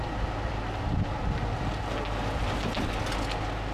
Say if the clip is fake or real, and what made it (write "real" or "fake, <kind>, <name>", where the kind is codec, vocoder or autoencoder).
real